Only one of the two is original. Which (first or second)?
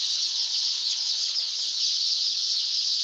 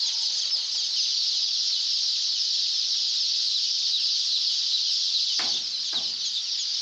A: second